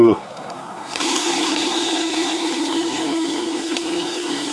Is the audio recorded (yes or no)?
no